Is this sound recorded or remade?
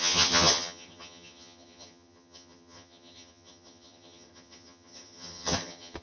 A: remade